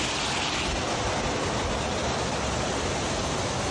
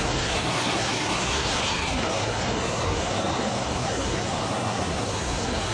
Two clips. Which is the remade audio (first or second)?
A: second